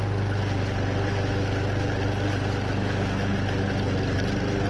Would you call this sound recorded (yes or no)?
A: yes